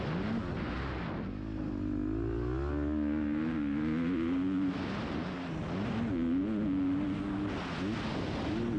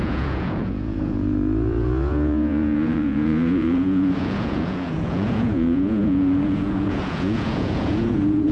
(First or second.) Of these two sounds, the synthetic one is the second